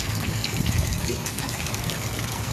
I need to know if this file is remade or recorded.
remade